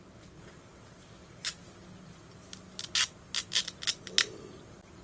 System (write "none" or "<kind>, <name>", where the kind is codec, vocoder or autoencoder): none